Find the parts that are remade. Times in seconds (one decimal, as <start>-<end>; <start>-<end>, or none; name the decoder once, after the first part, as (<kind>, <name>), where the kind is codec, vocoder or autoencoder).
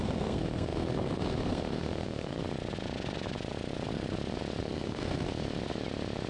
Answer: 0.0-2.4 (codec, SNAC); 4.6-5.3